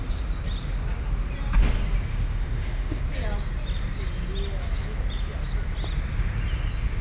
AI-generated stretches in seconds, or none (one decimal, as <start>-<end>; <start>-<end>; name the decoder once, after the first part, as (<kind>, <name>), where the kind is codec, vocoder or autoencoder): 2.1-3.0 (autoencoder, DAC-VAE)